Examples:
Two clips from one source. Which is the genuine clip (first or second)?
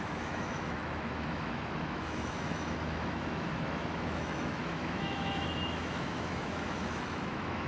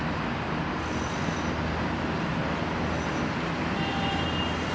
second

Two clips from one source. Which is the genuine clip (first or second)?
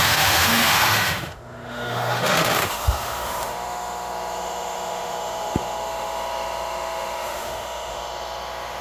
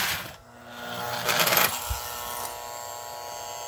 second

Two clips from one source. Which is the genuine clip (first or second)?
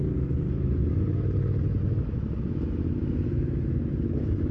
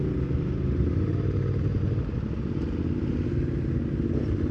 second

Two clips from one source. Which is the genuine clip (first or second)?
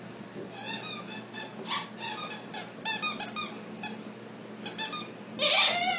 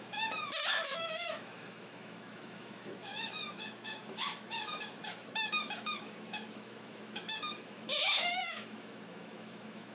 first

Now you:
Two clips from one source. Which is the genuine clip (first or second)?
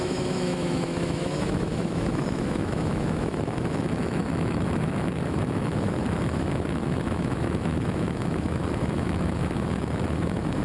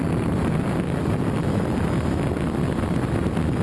second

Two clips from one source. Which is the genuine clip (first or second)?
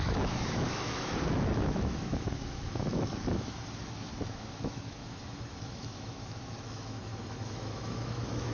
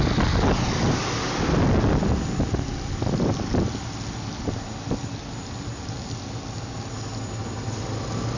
second